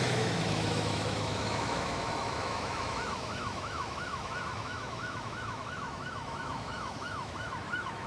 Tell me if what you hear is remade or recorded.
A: remade